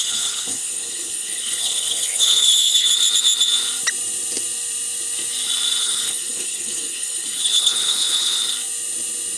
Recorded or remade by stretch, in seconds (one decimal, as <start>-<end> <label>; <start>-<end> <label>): 0.0-2.9 remade; 2.9-5.8 recorded; 5.8-8.4 remade; 8.4-9.4 recorded